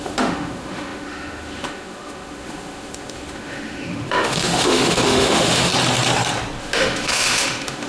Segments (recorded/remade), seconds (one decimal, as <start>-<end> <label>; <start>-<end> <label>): 0.0-5.7 remade; 5.7-6.6 recorded; 6.6-7.9 remade